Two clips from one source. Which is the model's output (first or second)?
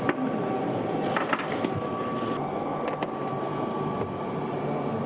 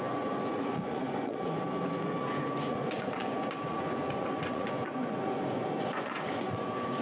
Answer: second